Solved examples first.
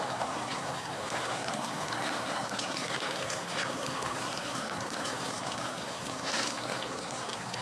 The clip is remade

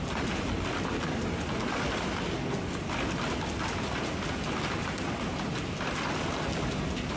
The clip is recorded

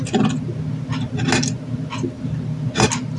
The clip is recorded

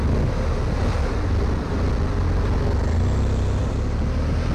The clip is recorded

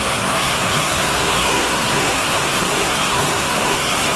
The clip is remade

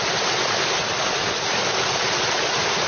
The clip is recorded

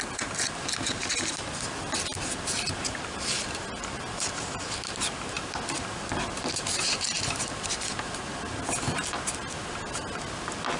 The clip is recorded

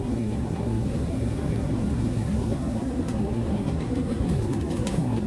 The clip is remade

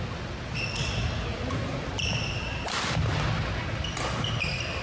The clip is recorded